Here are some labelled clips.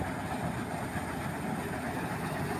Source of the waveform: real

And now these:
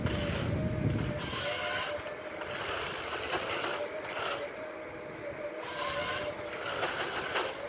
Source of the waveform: real